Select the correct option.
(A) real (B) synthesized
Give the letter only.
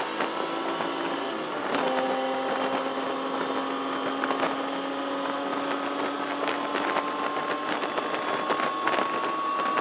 A